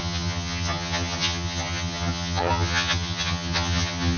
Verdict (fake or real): fake